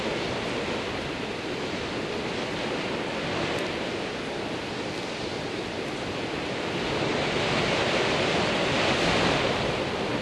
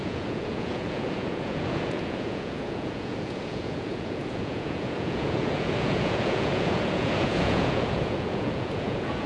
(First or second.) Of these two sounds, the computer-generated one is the second